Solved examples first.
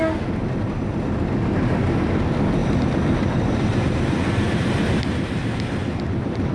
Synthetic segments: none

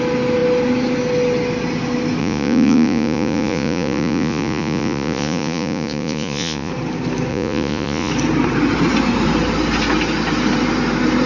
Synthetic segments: 2.2-6.7; 7.3-8.1

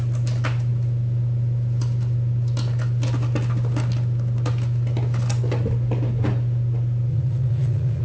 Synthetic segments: 7.1-8.0

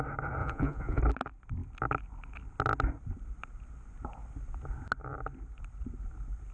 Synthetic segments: 0.4-1.0

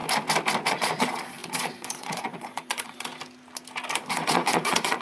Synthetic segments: 0.7-3.1; 4.1-5.0

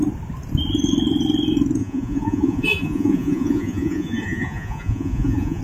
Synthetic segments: 1.8-5.6